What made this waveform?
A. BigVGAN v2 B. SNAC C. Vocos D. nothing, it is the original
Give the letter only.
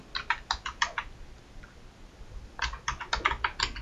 D